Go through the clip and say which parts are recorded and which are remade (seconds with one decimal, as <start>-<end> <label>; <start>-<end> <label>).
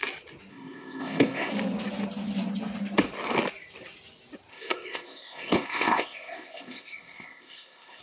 0.0-0.5 recorded; 0.5-1.5 remade; 1.5-4.5 recorded; 4.5-8.0 remade